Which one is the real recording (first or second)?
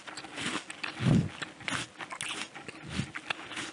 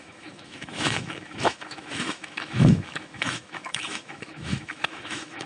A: first